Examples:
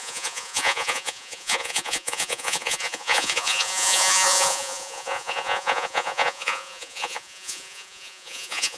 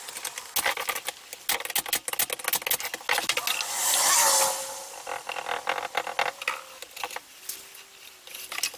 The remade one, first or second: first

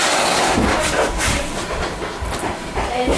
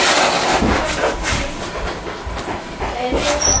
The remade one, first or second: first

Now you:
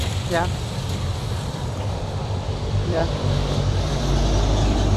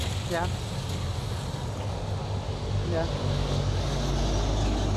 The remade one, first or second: first